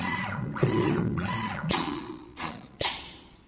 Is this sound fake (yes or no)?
yes